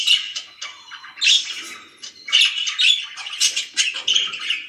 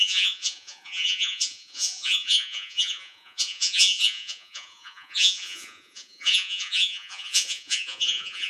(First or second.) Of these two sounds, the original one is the first